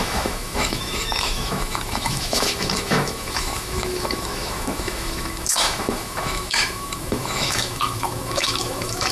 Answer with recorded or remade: remade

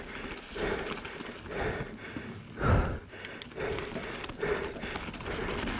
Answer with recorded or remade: recorded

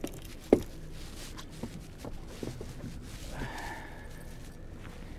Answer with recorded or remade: recorded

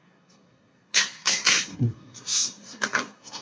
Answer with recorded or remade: remade